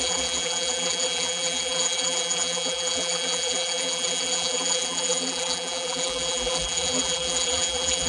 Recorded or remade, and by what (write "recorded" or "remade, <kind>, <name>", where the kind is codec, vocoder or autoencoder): remade, vocoder, BigVGAN v2